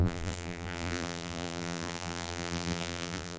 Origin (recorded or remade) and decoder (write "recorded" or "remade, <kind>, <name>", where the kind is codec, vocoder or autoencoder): remade, vocoder, BigVGAN v2